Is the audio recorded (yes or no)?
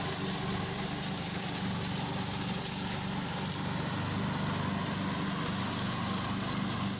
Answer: yes